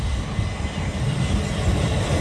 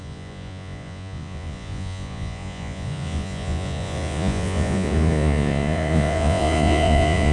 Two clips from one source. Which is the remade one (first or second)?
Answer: second